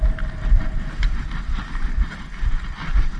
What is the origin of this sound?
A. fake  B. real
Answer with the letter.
B